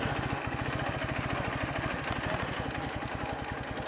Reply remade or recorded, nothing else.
recorded